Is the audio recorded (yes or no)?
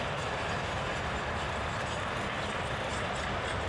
yes